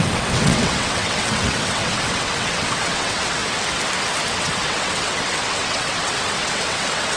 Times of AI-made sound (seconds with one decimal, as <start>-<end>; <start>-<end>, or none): 0.0-3.4; 4.3-7.2